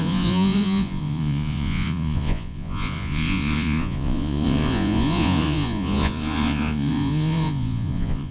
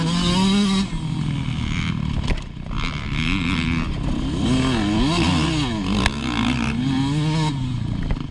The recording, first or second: second